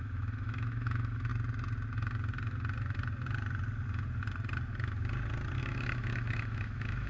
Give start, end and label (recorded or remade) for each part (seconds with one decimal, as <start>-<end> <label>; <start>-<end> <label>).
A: 0.0-1.3 remade; 1.3-5.6 recorded; 5.6-7.1 remade